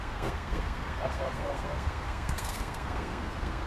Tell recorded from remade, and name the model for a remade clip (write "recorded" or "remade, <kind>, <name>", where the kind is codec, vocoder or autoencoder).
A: remade, codec, SNAC